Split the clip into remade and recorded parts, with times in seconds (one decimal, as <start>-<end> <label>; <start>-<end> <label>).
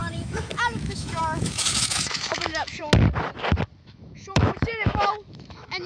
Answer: 0.0-2.8 remade; 2.8-3.8 recorded; 3.8-5.9 remade